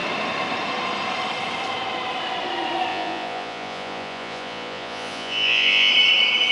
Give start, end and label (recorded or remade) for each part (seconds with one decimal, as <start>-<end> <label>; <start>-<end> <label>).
0.0-2.9 recorded; 2.9-5.9 remade; 5.9-6.5 recorded